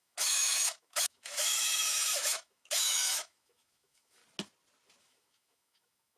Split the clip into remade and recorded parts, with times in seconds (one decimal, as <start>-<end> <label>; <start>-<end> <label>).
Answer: 0.0-4.2 remade; 4.2-5.0 recorded; 5.0-6.2 remade